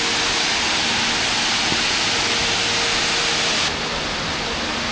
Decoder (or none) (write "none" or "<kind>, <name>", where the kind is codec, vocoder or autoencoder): none